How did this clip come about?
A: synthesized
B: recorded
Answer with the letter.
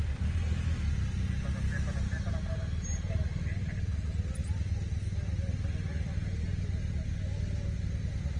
B